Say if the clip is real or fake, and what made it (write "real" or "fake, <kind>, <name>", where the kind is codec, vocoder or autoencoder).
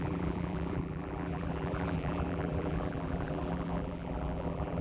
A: fake, vocoder, BigVGAN v2